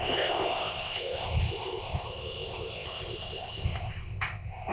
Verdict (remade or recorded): remade